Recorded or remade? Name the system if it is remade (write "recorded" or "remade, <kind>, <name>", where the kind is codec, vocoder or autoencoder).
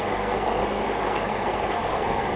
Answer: remade, codec, SNAC